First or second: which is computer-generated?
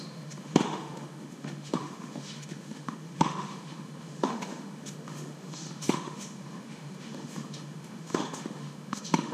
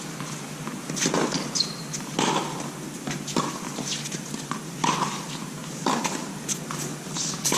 first